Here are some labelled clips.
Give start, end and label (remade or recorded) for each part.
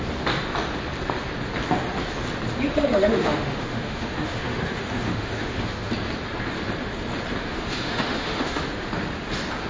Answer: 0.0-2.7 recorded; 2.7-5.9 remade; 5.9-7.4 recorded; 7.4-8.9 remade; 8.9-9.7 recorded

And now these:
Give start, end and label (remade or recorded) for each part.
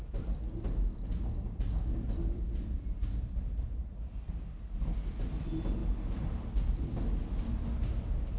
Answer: 0.0-8.4 recorded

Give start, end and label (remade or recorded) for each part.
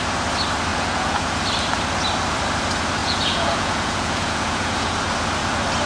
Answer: 0.0-0.7 recorded; 0.7-1.4 remade; 1.4-3.0 recorded; 3.0-5.0 remade; 5.0-5.9 recorded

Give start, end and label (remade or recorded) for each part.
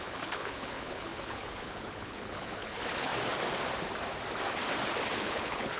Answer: 0.0-3.1 remade; 3.1-5.2 recorded; 5.2-5.8 remade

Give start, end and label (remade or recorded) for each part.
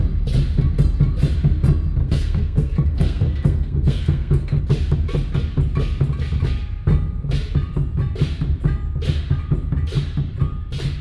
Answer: 0.0-2.0 recorded; 2.0-4.6 remade; 4.6-11.0 recorded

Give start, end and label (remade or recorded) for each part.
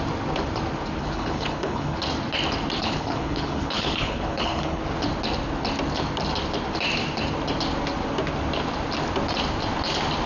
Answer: 0.0-1.0 recorded; 1.0-2.0 remade; 2.0-2.8 recorded; 2.8-4.8 remade; 4.8-10.3 recorded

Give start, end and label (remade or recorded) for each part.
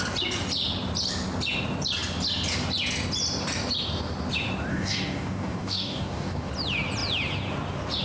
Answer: 0.0-4.7 recorded; 4.7-6.5 remade; 6.5-8.0 recorded